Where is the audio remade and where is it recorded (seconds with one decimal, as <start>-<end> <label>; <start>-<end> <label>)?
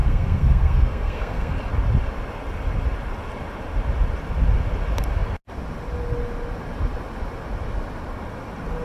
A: 0.0-1.6 remade; 1.6-8.8 recorded